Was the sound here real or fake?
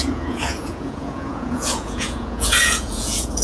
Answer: fake